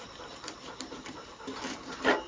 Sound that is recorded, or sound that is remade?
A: remade